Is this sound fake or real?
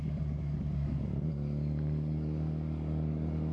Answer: fake